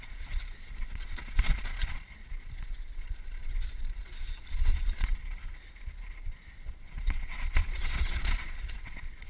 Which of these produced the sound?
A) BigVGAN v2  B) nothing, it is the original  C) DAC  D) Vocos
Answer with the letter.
D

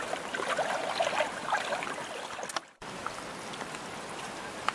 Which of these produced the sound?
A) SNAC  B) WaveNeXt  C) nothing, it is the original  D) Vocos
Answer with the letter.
C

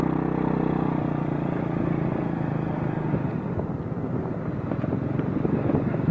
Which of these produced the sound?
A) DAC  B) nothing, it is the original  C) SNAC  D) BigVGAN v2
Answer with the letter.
B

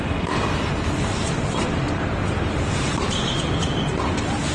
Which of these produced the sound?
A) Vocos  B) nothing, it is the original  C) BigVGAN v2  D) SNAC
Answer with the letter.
B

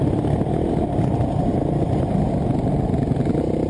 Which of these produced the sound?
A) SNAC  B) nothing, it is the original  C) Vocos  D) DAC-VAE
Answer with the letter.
B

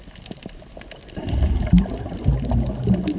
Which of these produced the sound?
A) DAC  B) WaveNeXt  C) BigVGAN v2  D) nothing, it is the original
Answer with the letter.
D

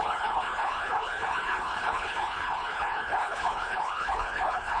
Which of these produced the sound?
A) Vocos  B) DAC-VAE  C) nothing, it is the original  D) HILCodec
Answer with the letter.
D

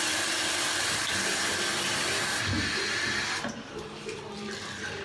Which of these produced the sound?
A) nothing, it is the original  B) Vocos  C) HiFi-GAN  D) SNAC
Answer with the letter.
A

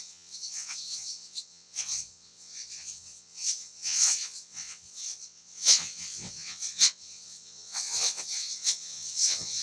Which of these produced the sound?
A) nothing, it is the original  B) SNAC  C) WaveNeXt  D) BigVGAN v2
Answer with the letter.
C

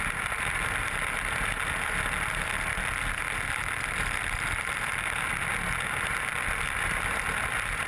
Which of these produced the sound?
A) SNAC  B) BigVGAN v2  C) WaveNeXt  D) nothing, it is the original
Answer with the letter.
D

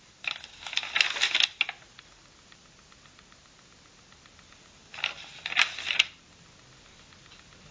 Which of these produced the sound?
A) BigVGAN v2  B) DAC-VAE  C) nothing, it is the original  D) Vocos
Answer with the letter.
C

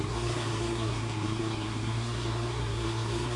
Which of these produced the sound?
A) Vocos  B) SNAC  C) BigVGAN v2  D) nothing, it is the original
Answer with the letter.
B